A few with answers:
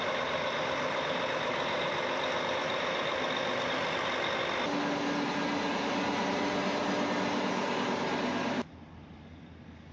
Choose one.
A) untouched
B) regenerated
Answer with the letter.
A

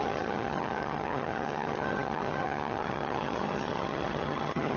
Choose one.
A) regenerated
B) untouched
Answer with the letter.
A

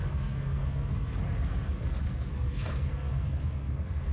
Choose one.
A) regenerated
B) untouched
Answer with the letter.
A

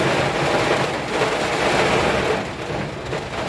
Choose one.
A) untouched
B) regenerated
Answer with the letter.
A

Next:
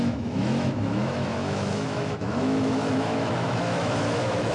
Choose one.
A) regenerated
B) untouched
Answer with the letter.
A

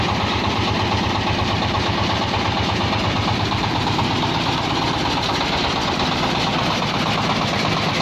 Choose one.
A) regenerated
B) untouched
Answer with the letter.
B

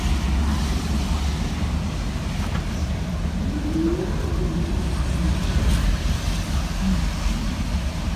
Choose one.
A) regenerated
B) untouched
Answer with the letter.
B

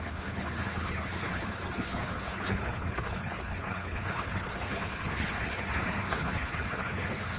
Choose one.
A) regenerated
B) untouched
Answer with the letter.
A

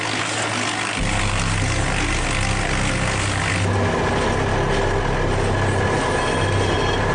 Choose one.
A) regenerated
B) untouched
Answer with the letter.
B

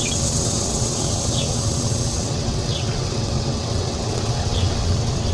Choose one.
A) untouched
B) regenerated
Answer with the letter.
B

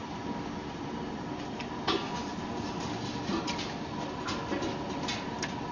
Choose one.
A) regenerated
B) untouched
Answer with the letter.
B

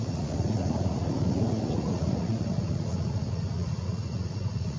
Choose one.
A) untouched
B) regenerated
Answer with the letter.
B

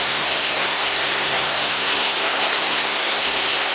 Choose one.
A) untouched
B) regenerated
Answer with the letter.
B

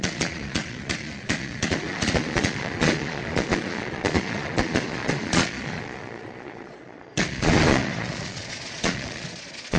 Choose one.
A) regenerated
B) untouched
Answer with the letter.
A